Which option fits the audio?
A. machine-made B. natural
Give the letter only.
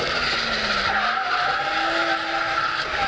B